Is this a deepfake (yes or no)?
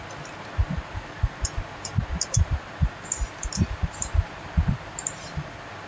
no